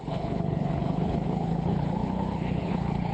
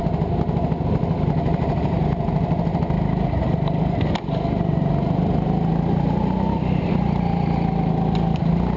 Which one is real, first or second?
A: second